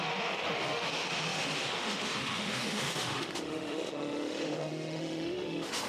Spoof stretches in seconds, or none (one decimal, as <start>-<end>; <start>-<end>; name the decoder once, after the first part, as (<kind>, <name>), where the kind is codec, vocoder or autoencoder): 0.0-5.9 (autoencoder, DAC-VAE)

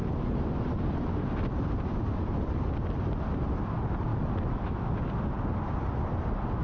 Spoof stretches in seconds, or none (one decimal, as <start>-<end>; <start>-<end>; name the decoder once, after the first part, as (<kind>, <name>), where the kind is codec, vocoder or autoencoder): 4.1-4.9 (autoencoder, DAC-VAE)

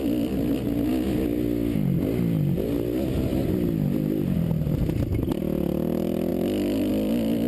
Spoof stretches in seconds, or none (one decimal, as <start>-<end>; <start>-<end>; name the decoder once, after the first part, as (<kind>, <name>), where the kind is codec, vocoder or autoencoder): none

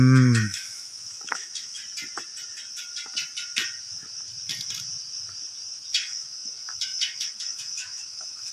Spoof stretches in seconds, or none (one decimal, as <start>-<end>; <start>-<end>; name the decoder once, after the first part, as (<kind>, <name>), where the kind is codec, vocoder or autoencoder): 0.0-1.8 (autoencoder, DAC-VAE); 5.9-8.5